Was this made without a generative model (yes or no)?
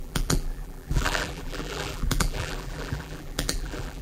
no